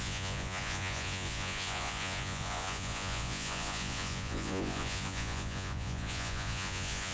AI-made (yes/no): yes